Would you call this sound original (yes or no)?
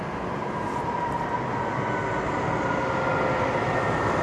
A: yes